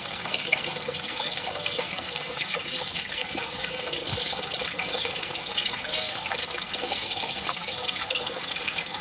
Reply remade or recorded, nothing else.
remade